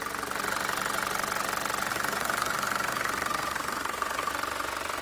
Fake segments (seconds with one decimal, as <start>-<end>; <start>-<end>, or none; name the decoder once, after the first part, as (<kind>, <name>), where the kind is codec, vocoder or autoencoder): 1.9-4.3 (codec, SNAC)